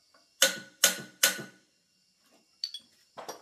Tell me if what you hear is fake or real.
real